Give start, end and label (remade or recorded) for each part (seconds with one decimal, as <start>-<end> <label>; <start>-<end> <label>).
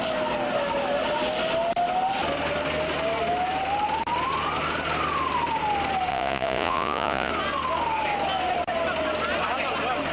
0.0-6.1 recorded; 6.1-7.3 remade; 7.3-10.1 recorded